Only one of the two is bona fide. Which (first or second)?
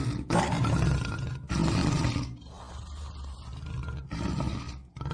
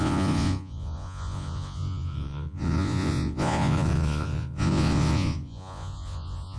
first